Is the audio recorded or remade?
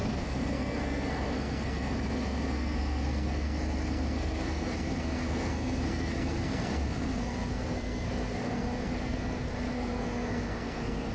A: remade